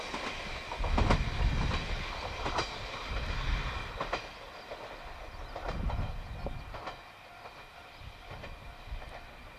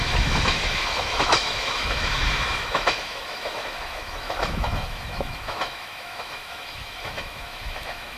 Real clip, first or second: first